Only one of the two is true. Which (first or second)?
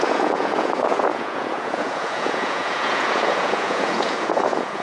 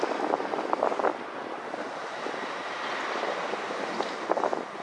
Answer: second